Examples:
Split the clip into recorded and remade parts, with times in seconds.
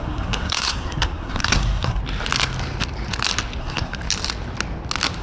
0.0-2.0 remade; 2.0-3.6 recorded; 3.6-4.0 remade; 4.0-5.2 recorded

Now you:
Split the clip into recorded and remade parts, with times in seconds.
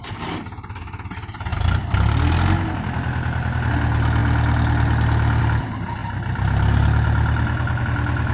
0.0-8.3 recorded